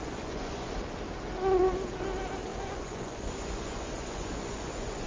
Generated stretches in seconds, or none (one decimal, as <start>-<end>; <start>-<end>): 0.0-0.7; 2.5-5.1